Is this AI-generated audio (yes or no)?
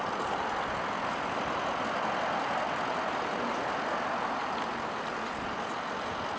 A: no